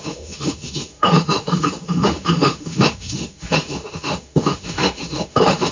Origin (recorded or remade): remade